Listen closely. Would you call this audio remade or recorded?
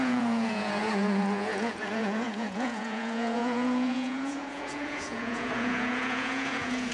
remade